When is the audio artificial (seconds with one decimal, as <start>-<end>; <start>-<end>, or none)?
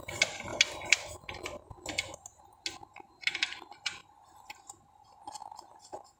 none